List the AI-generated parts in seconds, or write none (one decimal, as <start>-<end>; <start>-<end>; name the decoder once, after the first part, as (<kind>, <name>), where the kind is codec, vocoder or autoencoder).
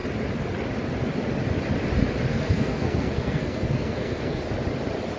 2.3-4.4 (codec, SNAC)